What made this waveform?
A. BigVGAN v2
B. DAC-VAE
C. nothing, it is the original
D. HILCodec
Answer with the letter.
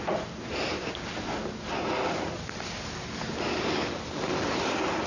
A